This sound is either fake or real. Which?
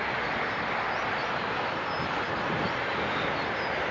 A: real